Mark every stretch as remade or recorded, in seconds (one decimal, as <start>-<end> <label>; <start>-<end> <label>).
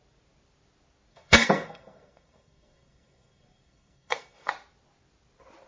0.0-1.1 recorded; 1.1-4.5 remade; 4.5-5.7 recorded